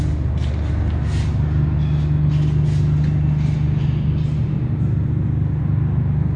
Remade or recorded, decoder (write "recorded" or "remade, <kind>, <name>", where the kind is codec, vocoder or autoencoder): recorded